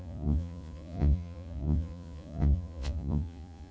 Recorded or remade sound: remade